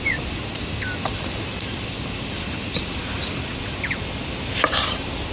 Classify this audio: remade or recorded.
recorded